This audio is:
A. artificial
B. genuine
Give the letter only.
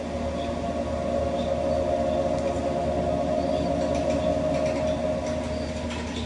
B